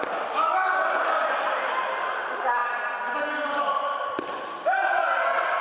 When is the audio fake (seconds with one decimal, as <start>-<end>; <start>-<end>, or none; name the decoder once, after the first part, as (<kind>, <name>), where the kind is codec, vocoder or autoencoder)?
none